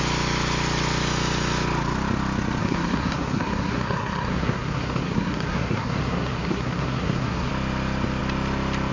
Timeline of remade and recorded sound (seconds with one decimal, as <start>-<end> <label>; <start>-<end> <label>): 0.0-2.6 recorded; 2.6-7.5 remade; 7.5-8.9 recorded